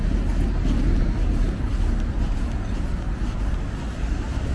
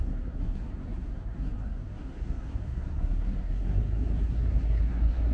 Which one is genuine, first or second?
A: first